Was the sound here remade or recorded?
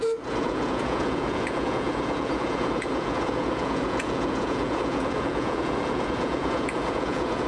remade